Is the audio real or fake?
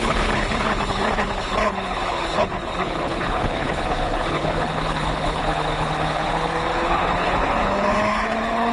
fake